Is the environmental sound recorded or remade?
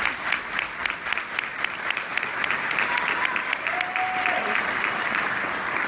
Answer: recorded